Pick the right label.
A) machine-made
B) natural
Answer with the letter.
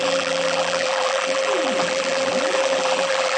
A